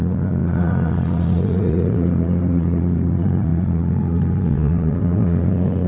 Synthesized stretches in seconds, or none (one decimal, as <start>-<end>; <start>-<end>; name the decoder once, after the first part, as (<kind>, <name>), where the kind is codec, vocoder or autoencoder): 0.0-5.9 (vocoder, Vocos)